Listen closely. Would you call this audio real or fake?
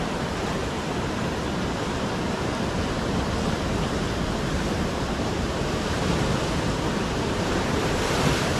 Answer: fake